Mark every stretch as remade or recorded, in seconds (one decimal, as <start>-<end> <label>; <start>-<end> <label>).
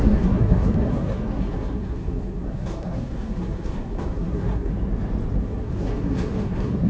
0.0-4.7 remade; 4.7-5.4 recorded; 5.4-6.9 remade